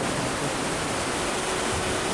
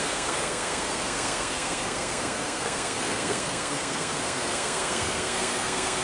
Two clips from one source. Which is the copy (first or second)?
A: second